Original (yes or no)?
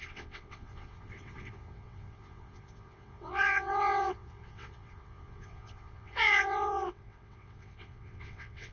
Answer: no